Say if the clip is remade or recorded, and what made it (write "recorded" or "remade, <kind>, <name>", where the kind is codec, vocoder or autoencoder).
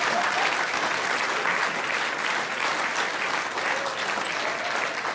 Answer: recorded